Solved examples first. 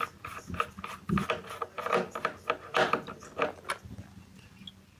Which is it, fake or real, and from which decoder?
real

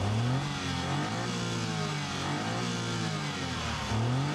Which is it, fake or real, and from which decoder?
real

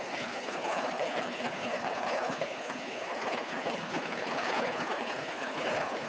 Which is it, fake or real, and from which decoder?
fake, codec, HILCodec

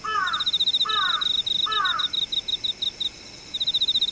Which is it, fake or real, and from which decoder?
real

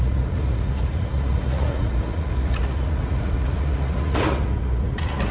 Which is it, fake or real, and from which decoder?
fake, vocoder, Vocos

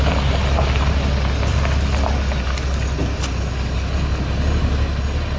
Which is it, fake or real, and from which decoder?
real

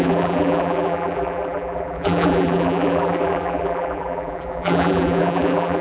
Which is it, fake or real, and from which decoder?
fake, vocoder, BigVGAN v2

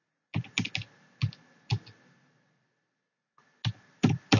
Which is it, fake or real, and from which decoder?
real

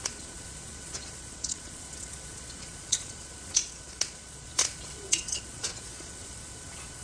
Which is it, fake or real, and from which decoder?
fake, vocoder, Vocos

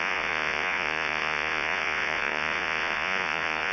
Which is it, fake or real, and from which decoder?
fake, vocoder, Vocos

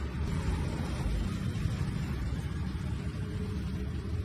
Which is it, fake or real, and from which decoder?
real